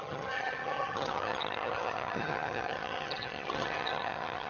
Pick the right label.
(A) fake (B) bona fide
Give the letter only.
A